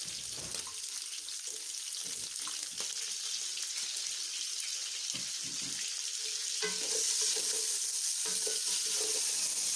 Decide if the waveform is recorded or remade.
recorded